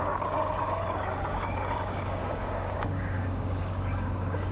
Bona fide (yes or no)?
no